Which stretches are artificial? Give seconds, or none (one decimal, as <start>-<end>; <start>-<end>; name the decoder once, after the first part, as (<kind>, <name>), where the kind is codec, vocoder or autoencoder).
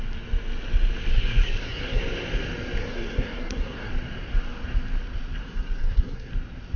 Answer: 1.1-2.0 (codec, SNAC); 2.8-3.9; 5.4-6.3